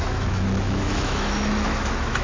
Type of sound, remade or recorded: remade